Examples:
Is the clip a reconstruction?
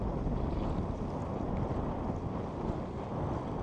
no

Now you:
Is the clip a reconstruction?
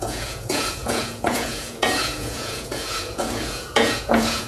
yes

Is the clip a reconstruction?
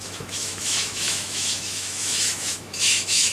yes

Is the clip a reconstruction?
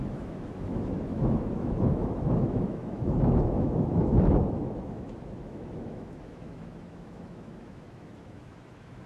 yes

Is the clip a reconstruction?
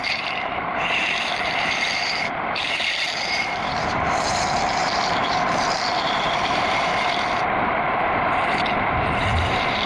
yes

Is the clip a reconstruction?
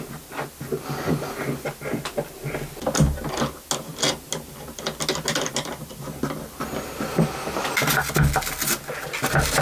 no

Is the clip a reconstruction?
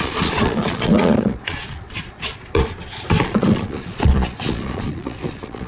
yes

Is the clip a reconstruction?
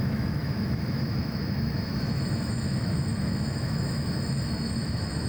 yes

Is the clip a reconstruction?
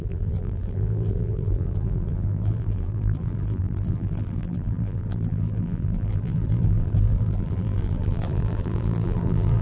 yes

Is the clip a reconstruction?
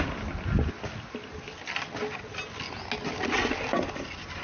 no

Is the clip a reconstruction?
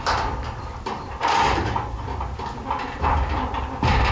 no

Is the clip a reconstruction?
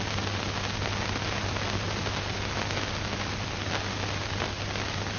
no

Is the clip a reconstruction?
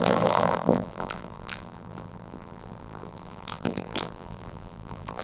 yes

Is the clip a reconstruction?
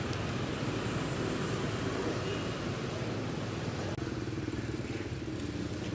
no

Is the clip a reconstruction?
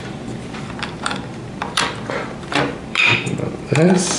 yes